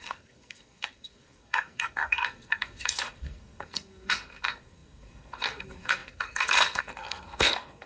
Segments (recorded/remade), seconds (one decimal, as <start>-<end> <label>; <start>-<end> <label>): 0.0-7.9 remade